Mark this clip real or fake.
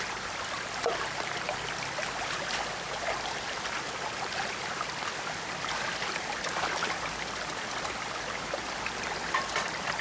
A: fake